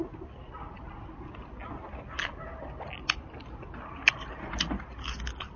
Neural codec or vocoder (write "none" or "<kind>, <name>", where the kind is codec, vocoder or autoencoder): none